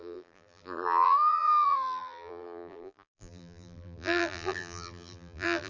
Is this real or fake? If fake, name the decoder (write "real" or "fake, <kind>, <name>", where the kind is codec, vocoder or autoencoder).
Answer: fake, vocoder, BigVGAN v2